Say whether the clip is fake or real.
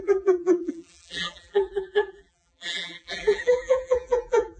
fake